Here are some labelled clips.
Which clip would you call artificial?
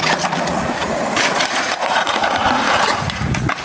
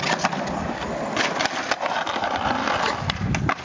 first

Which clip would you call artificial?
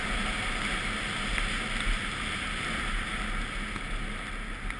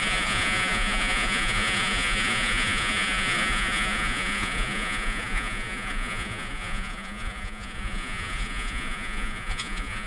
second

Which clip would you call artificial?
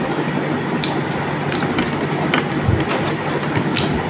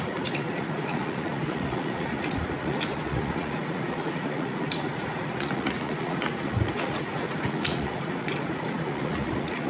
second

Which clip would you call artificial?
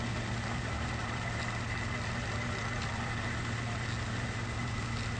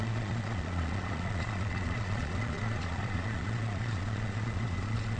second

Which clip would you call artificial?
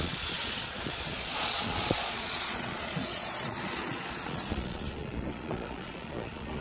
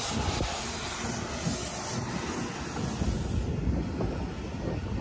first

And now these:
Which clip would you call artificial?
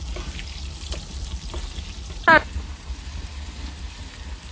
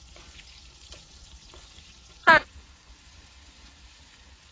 second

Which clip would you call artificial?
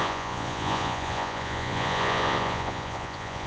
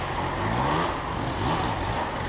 first